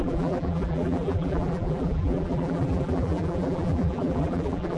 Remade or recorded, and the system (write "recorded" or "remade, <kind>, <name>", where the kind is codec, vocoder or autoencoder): remade, vocoder, BigVGAN v2